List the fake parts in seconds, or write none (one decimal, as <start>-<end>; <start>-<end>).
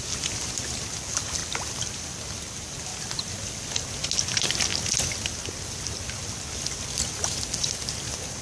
none